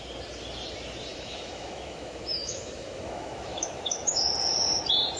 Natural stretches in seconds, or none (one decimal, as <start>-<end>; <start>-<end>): 0.0-1.1; 4.2-5.2